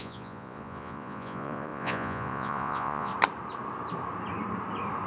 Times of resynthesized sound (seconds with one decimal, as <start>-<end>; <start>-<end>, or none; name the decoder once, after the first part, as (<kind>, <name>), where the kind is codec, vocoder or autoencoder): 0.0-3.1 (vocoder, Vocos)